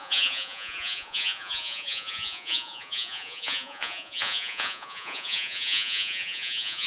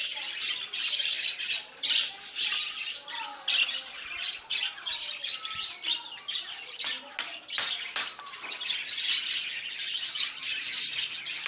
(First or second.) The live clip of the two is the second